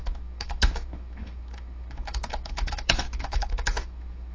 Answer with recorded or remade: remade